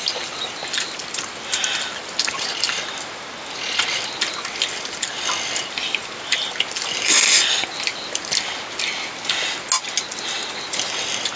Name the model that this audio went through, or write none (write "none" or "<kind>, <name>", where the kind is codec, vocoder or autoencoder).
none